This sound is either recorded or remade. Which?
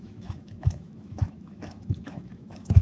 remade